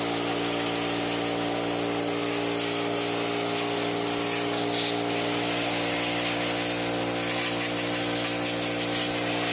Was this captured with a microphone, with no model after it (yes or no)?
yes